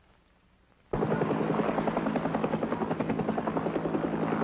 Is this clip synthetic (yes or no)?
no